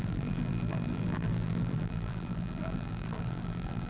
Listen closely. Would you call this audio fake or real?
fake